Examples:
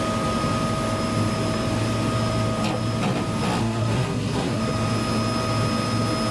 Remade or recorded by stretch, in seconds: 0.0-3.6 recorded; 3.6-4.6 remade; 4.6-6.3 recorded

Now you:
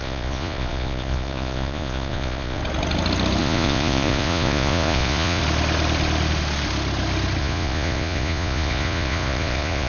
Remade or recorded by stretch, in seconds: 0.0-2.6 remade; 2.6-3.4 recorded; 3.4-5.4 remade; 5.4-7.4 recorded; 7.4-9.9 remade

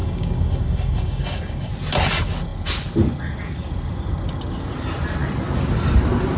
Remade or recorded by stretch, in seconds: 0.0-1.7 remade; 1.7-6.4 recorded

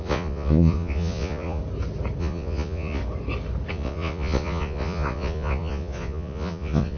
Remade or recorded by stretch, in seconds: 0.0-1.6 remade; 1.6-2.2 recorded; 2.2-3.0 remade; 3.0-3.7 recorded; 3.7-7.0 remade

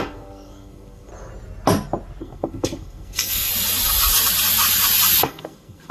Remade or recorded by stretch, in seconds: 0.0-1.1 remade; 1.1-2.2 recorded; 2.2-3.5 remade; 3.5-5.2 recorded; 5.2-5.9 remade